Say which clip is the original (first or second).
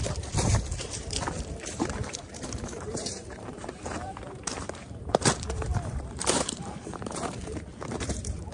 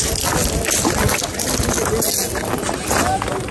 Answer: second